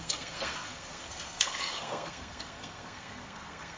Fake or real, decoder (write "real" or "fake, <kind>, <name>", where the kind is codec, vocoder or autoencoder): fake, codec, SNAC